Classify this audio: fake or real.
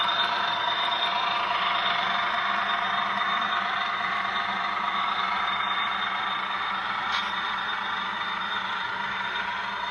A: real